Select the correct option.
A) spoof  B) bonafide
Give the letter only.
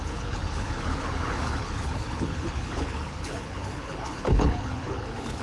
A